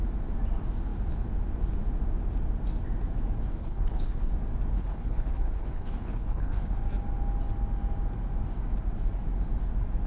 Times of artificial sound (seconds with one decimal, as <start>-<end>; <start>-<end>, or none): 3.5-4.3; 4.7-6.8